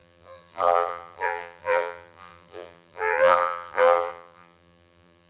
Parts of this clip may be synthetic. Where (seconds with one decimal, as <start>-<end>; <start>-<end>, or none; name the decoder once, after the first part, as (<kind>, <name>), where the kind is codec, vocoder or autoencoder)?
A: 0.0-5.3 (vocoder, BigVGAN v2)